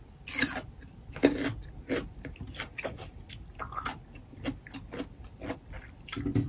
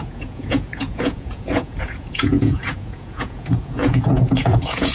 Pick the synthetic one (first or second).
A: second